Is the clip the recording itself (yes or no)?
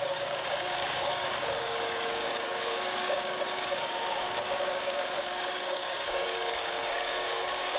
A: no